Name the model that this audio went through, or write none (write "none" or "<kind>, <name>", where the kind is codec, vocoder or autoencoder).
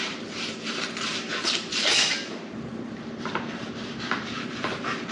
vocoder, BigVGAN v2